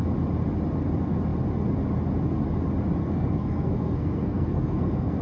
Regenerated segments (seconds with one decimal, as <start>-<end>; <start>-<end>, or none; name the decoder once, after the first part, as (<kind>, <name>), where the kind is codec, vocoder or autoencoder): 3.0-5.2 (codec, SNAC)